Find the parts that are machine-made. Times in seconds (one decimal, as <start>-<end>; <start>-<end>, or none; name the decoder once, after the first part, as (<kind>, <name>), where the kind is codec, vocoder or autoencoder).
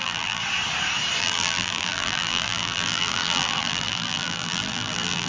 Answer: 0.0-0.4 (vocoder, BigVGAN v2); 1.2-5.3